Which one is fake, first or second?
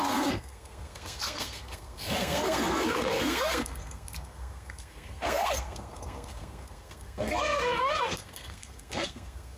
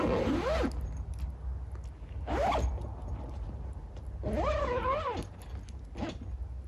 first